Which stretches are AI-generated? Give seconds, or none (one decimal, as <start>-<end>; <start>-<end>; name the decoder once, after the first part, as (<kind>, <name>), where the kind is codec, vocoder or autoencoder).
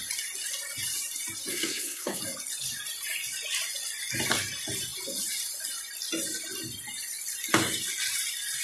1.5-2.2 (codec, SNAC)